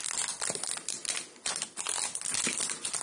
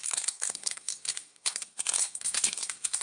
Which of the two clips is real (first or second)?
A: first